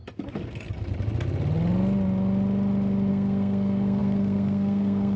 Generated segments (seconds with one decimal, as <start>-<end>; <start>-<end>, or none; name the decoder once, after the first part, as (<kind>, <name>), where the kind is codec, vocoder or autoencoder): 3.1-5.2 (codec, SNAC)